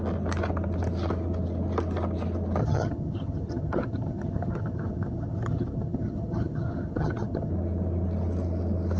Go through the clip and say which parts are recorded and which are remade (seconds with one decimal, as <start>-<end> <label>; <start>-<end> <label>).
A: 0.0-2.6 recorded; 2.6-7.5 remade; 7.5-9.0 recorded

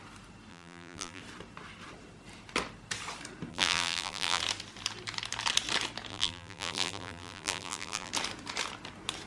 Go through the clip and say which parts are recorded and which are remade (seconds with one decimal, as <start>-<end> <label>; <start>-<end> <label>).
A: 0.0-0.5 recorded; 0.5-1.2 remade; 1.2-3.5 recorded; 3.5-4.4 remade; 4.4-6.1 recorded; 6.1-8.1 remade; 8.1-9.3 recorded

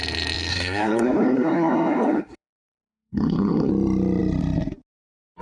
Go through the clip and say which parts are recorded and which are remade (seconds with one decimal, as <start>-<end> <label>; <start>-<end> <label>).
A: 0.0-0.5 recorded; 0.5-3.7 remade; 3.7-5.4 recorded

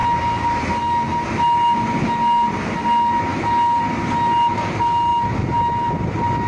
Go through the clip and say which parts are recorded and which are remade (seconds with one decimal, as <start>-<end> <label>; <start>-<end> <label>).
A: 0.0-6.5 recorded

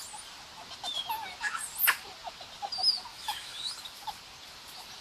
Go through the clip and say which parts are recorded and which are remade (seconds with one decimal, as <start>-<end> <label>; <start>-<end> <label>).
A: 0.0-3.1 recorded; 3.1-3.7 remade; 3.7-5.0 recorded

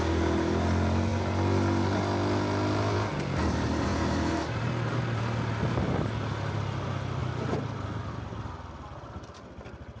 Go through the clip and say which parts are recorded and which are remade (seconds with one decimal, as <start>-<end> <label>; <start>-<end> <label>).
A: 0.0-10.0 recorded